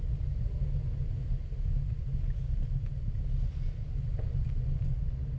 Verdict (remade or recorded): recorded